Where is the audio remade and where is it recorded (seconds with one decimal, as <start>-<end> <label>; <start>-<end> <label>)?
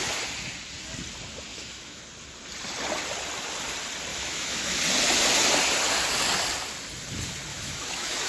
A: 0.0-1.5 recorded; 1.5-2.0 remade; 2.0-4.1 recorded; 4.1-4.8 remade; 4.8-7.5 recorded; 7.5-8.3 remade